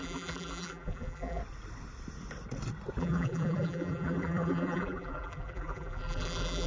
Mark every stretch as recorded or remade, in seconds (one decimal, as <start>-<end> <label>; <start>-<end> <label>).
0.0-1.4 remade; 1.4-3.0 recorded; 3.0-6.7 remade